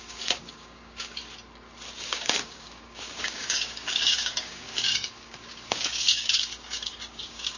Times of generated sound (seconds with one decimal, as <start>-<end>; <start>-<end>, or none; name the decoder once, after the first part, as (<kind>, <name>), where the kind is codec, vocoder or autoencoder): 0.0-1.2 (codec, DAC); 2.0-7.6